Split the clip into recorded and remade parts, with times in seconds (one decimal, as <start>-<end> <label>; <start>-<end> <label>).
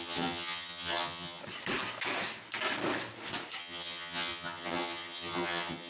0.0-1.4 remade; 1.4-3.6 recorded; 3.6-5.9 remade